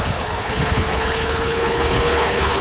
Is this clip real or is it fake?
fake